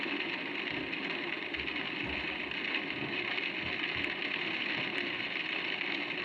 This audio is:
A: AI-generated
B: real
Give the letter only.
B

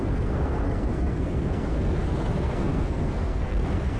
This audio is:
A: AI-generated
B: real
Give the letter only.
A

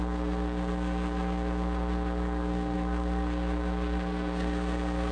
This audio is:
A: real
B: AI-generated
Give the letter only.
B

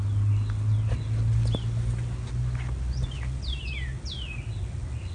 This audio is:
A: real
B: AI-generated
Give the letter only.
A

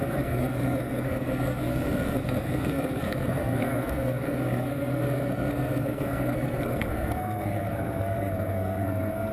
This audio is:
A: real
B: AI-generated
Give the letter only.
B